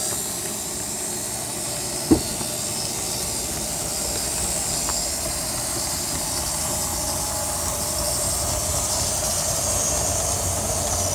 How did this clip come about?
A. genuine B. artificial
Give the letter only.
A